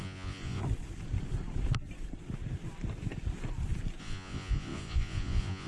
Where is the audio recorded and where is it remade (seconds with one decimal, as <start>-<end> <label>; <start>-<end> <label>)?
0.0-0.6 remade; 0.6-4.0 recorded; 4.0-5.7 remade